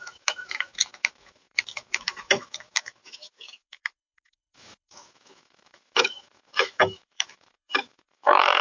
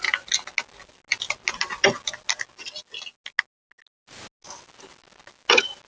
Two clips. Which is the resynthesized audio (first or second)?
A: first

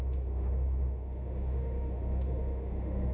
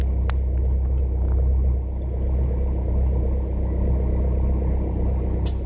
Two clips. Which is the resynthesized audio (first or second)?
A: first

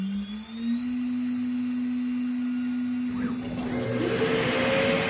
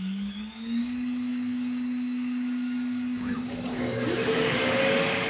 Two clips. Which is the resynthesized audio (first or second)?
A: second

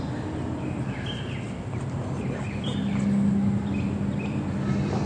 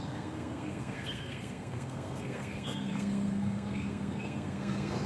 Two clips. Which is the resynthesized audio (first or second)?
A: second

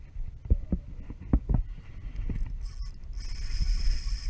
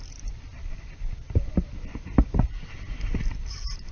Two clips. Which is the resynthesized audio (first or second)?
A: second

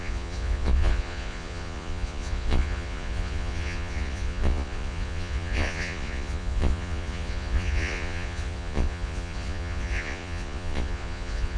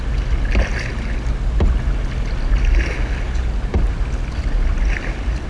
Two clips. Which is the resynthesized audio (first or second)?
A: first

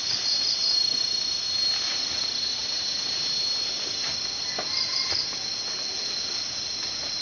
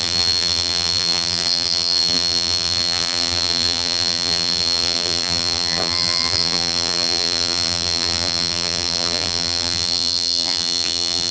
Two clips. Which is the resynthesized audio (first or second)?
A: second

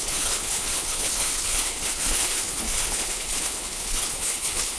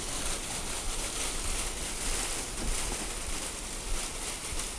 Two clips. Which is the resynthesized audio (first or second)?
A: first